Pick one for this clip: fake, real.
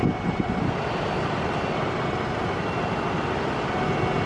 real